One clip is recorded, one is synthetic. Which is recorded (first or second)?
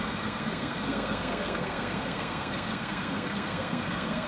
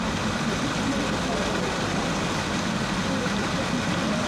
second